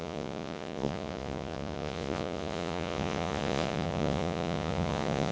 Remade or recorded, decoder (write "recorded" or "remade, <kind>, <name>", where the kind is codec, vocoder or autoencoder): remade, vocoder, Vocos